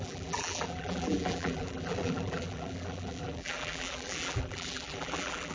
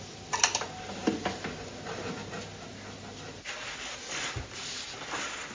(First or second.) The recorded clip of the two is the second